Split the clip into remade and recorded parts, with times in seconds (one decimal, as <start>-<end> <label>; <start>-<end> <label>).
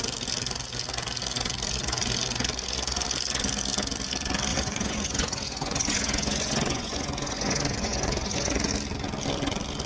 0.0-4.5 recorded; 4.5-8.7 remade; 8.7-9.9 recorded